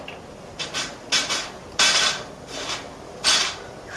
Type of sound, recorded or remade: recorded